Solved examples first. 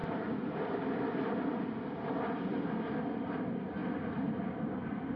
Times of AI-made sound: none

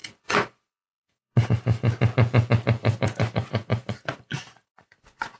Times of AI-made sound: 0.0-1.5; 2.8-5.4

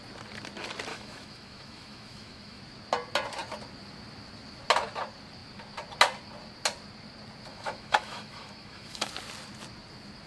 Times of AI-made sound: 0.9-2.6; 7.5-9.1

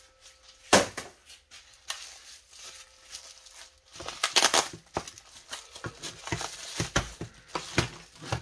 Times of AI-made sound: none